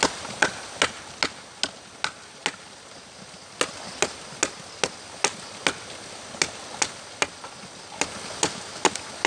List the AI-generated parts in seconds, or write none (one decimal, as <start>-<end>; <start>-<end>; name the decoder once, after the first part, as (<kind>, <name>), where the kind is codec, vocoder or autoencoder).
none